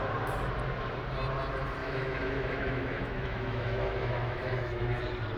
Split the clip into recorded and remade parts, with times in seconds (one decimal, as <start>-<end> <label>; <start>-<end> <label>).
0.0-1.8 recorded; 1.8-5.0 remade; 5.0-5.4 recorded